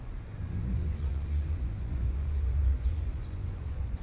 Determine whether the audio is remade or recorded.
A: remade